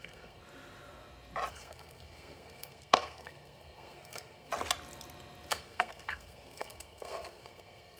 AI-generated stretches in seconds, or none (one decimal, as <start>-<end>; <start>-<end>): 0.0-0.4; 1.5-4.5; 5.5-8.0